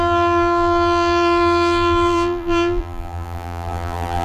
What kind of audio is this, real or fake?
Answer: fake